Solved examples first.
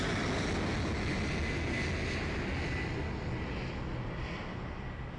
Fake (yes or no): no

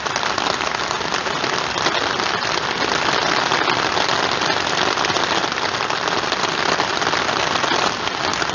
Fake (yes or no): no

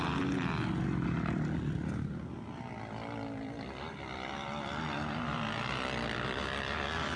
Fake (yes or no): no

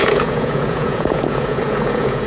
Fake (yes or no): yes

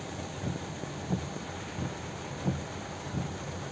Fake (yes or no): no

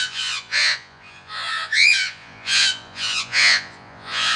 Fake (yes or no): yes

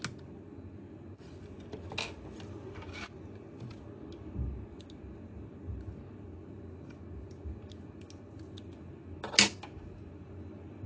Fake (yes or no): no